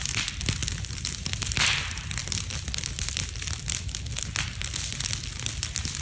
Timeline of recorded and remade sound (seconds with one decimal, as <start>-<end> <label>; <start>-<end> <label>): 0.0-6.0 recorded